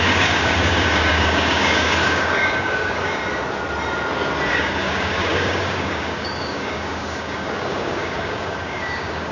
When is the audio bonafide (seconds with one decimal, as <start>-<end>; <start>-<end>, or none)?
3.2-4.5